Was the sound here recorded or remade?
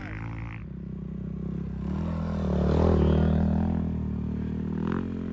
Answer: recorded